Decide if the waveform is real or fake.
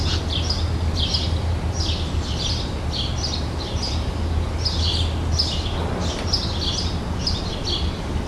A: real